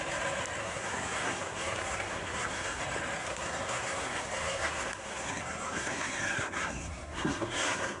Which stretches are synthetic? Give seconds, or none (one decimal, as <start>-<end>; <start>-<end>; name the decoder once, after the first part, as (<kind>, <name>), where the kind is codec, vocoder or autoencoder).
0.6-2.8 (codec, SNAC); 3.2-8.0